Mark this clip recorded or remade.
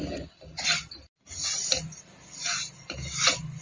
recorded